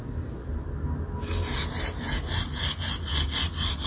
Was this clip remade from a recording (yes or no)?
no